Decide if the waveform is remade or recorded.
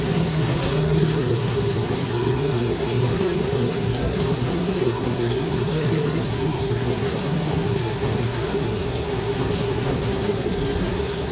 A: remade